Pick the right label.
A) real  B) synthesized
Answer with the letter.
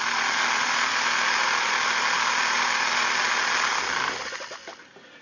A